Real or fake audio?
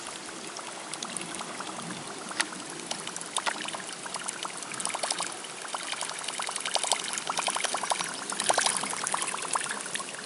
real